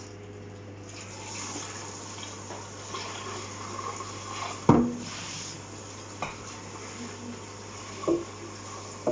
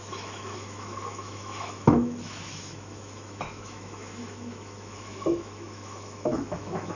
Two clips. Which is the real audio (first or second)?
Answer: first